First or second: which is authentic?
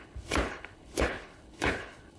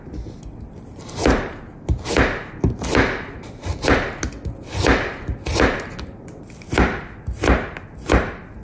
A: second